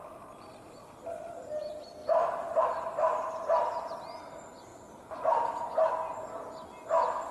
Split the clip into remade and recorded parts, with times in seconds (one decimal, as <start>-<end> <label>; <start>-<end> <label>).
0.0-7.3 recorded